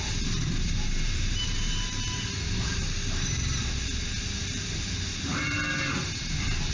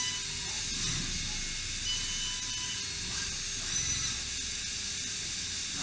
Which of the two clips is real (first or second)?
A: second